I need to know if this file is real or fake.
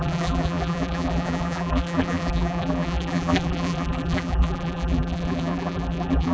fake